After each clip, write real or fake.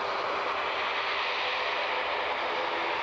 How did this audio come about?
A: real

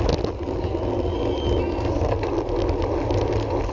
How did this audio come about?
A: real